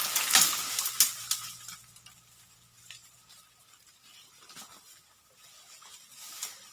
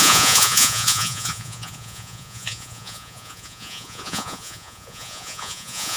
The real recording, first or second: first